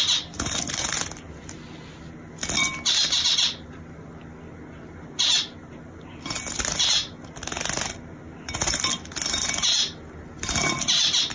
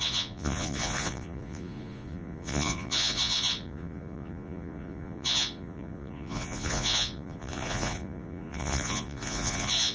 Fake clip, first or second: second